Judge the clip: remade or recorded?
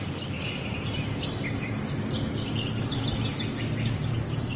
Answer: recorded